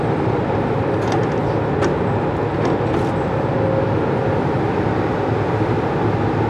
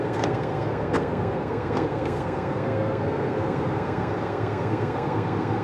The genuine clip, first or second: first